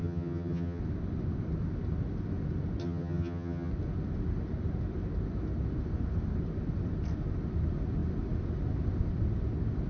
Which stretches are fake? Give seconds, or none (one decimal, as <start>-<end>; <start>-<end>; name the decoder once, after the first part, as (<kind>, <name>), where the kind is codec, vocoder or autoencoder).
0.0-0.8 (vocoder, HiFi-GAN); 2.8-3.7